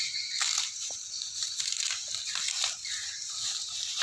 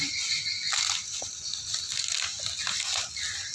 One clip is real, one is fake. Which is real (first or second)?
second